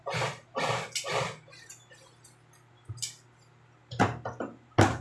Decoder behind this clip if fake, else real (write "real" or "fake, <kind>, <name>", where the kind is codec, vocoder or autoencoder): real